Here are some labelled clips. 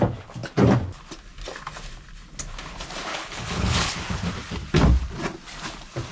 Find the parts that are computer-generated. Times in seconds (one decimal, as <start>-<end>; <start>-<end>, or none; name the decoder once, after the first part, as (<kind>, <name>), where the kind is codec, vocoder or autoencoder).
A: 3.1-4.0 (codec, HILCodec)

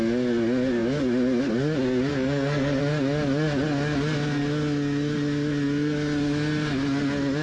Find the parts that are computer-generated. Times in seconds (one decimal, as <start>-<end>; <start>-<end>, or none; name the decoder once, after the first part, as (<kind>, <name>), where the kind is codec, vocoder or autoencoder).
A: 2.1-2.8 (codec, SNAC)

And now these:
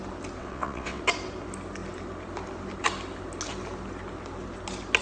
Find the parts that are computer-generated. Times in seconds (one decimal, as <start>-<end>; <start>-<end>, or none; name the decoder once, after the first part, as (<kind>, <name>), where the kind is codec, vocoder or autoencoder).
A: 0.4-1.0 (vocoder, WaveNeXt)

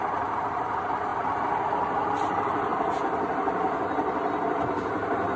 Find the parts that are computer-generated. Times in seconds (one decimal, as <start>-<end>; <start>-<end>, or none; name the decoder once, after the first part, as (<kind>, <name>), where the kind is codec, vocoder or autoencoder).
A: none